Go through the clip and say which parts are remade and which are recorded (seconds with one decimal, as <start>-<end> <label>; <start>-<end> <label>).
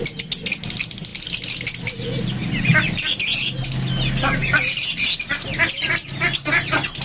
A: 0.0-7.0 recorded